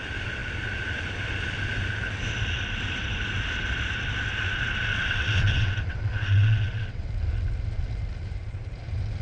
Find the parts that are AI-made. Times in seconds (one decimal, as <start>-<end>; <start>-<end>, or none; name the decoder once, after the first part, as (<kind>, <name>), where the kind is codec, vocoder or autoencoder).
4.9-7.1 (vocoder, WaveNeXt)